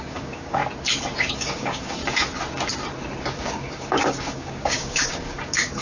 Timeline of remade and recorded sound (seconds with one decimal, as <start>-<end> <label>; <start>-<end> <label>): 0.0-0.6 remade; 0.6-1.3 recorded; 1.3-2.0 remade; 2.0-3.2 recorded; 3.2-5.8 remade